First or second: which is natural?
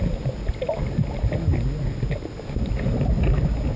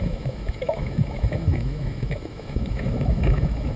first